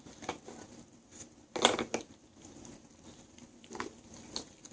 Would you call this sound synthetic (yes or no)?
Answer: no